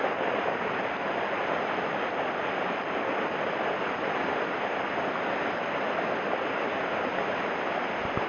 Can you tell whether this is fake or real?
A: real